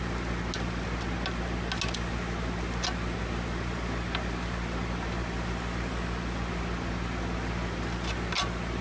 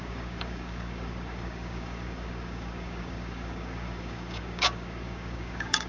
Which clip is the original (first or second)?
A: first